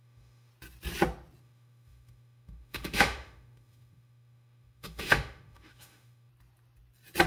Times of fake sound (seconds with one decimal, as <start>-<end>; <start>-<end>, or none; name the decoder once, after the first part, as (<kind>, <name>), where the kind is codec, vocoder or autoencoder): 0.0-0.5 (autoencoder, DAC-VAE); 1.4-6.3